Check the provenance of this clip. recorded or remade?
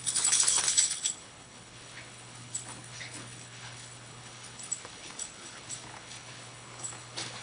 remade